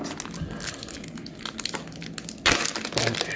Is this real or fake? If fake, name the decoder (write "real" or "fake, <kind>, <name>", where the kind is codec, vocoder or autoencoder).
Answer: real